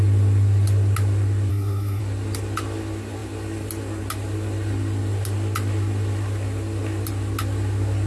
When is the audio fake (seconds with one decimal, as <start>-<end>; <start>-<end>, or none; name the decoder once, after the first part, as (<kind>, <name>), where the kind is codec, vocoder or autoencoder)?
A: 1.5-2.0 (codec, SNAC)

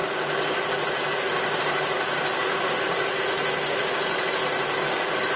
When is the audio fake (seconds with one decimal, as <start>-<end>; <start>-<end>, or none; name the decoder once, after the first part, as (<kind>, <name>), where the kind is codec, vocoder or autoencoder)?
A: none

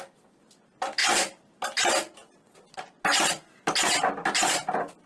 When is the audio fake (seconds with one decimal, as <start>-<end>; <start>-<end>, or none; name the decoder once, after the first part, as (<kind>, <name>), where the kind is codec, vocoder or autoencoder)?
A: none